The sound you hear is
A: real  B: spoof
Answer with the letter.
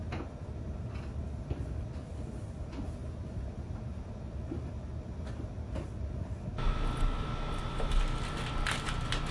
A